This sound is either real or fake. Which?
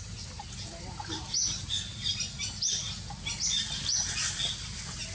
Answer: real